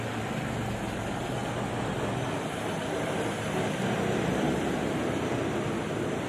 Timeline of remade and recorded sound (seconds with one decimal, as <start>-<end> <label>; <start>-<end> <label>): 0.0-6.3 recorded